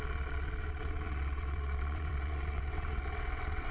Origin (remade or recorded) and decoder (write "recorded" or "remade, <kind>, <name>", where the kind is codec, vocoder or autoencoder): remade, vocoder, WaveNeXt